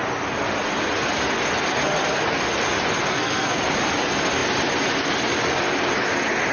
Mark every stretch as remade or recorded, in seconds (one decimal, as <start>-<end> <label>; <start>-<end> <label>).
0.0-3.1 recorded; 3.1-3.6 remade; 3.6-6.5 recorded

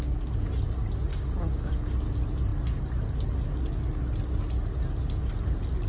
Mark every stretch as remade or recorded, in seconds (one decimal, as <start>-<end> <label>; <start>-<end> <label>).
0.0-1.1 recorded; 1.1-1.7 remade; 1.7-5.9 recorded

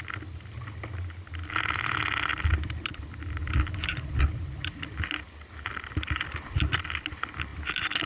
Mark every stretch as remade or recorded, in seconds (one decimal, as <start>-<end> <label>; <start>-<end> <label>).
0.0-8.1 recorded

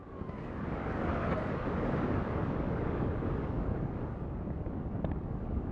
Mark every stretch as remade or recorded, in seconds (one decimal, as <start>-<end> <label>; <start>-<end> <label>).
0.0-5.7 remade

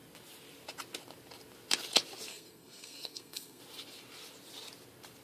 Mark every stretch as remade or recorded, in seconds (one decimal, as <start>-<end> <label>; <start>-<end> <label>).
0.0-2.3 recorded; 2.3-3.6 remade; 3.6-5.2 recorded

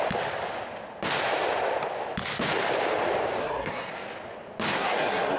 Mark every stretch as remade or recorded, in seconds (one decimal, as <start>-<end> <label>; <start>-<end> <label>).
0.0-3.4 recorded; 3.4-3.9 remade; 3.9-4.7 recorded; 4.7-5.4 remade

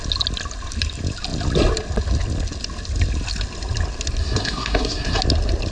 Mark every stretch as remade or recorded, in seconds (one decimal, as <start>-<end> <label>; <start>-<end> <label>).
0.0-4.2 recorded; 4.2-5.2 remade; 5.2-5.7 recorded